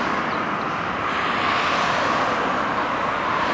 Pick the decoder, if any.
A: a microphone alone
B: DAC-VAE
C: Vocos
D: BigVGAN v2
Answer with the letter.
A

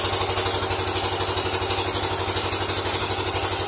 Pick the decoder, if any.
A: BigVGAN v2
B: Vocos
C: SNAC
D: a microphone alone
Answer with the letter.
D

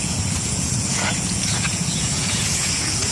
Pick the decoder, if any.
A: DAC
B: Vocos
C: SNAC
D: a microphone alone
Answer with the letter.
B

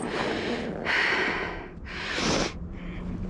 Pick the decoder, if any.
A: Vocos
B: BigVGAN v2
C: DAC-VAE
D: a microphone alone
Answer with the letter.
D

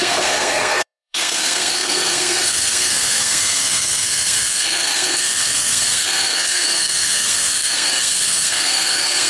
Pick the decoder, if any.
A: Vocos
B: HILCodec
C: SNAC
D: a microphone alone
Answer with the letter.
C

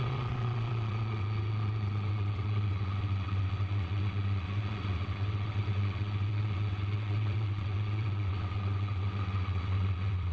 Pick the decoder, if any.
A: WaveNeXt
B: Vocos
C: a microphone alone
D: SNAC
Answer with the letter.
A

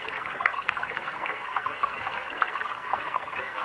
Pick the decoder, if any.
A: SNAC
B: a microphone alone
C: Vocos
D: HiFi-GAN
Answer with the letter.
A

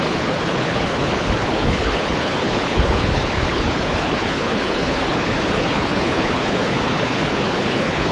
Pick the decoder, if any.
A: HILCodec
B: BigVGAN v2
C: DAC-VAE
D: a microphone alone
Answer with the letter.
A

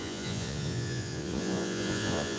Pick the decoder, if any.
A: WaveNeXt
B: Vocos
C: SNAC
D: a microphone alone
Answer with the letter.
B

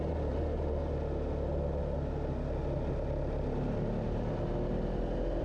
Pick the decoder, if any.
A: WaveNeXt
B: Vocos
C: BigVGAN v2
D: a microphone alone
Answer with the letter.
D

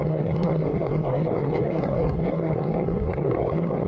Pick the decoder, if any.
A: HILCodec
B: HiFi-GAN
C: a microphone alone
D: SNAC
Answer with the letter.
D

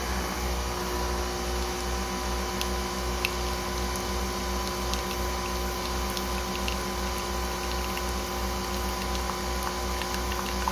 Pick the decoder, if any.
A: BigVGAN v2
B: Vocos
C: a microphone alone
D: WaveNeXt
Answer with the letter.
C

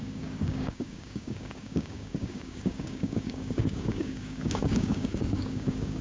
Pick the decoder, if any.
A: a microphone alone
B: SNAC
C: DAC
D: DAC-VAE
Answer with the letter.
C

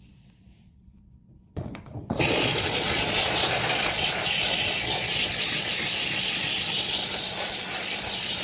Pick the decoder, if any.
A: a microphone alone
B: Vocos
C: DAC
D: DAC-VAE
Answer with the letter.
B